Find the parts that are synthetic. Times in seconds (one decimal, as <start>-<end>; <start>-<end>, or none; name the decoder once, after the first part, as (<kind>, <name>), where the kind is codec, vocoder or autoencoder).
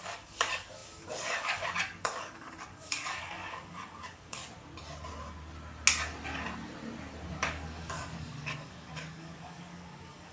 0.0-4.4 (codec, DAC); 7.3-10.3